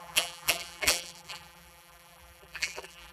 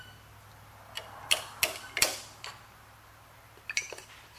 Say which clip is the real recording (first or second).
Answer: second